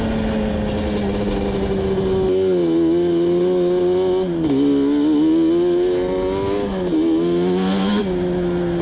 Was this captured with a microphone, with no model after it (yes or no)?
yes